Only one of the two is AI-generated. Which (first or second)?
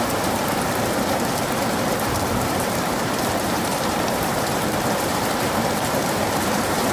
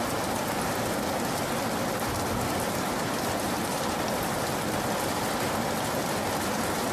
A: first